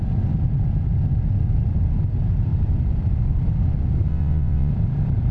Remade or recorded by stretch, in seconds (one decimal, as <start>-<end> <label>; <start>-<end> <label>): 0.0-4.1 recorded; 4.1-4.7 remade; 4.7-5.3 recorded